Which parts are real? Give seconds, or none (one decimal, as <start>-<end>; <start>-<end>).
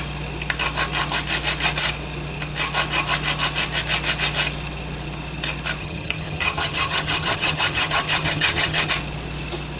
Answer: 0.0-5.8; 8.9-9.8